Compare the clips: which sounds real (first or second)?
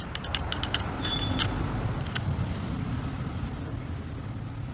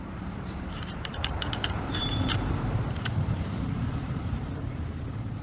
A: first